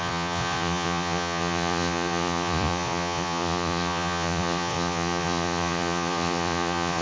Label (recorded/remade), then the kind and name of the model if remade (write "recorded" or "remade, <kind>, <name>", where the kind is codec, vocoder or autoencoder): remade, vocoder, Vocos